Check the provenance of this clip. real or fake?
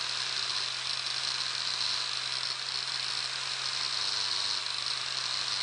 real